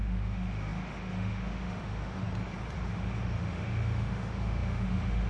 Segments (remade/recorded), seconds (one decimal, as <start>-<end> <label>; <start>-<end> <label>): 0.0-2.2 remade; 2.2-2.8 recorded; 2.8-5.3 remade